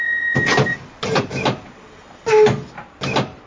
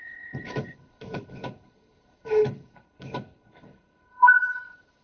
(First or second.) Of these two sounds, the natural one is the first